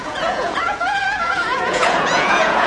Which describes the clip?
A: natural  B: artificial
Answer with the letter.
B